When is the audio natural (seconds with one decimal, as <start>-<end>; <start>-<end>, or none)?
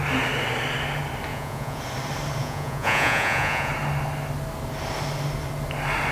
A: 0.0-1.3; 1.8-2.4; 3.7-6.1